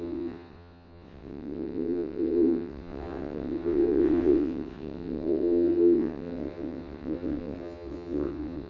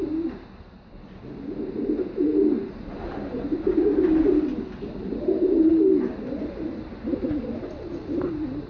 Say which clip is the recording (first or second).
second